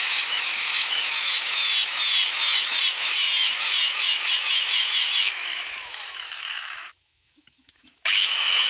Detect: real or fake fake